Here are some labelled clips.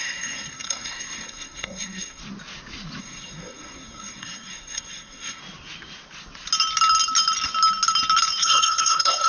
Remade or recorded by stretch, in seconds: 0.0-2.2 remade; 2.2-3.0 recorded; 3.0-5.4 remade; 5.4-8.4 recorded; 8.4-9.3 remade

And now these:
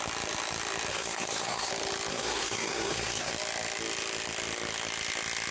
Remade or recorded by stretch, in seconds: 0.0-0.9 recorded; 0.9-1.7 remade; 1.7-2.1 recorded; 2.1-3.3 remade; 3.3-5.5 recorded

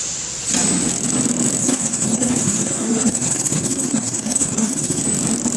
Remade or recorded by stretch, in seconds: 0.0-1.6 recorded; 1.6-5.0 remade; 5.0-5.6 recorded

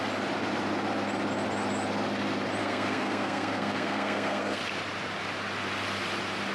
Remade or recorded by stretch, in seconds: 0.0-2.6 recorded; 2.6-4.6 remade; 4.6-6.5 recorded